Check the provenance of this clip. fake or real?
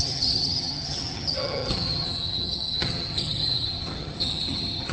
fake